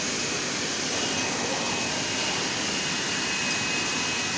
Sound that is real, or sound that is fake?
fake